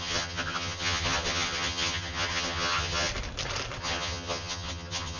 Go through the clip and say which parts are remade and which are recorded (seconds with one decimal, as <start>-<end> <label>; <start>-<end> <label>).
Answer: 0.0-3.1 remade; 3.1-3.8 recorded; 3.8-5.2 remade